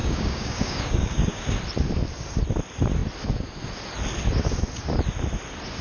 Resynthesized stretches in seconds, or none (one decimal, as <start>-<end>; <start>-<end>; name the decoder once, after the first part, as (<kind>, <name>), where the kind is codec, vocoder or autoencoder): 0.0-1.4 (codec, DAC)